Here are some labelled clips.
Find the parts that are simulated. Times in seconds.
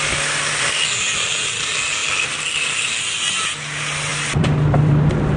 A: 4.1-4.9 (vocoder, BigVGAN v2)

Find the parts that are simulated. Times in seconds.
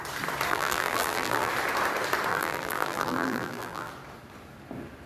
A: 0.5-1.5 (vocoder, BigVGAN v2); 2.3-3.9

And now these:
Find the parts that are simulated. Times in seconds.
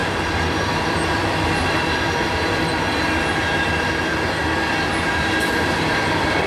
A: 0.7-2.7 (vocoder, BigVGAN v2); 4.9-6.5